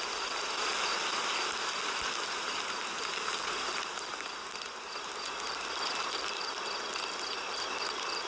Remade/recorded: recorded